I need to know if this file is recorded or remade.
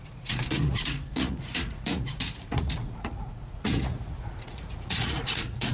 remade